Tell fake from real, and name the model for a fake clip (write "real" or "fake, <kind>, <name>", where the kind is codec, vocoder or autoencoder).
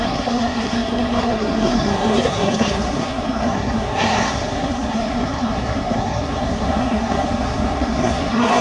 fake, codec, SNAC